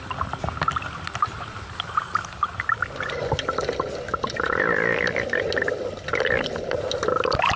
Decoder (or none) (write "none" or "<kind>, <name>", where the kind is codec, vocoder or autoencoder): none